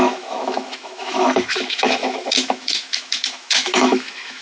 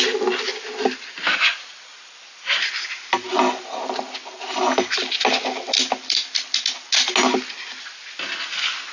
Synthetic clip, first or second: first